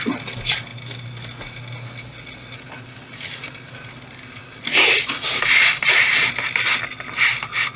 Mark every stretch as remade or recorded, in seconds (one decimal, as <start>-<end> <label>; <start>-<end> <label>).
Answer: 0.0-7.8 recorded